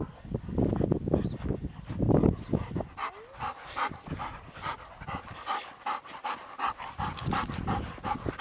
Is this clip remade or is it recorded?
recorded